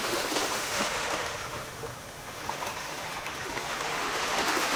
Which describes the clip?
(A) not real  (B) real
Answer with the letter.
A